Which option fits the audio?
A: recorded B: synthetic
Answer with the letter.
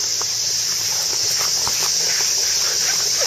A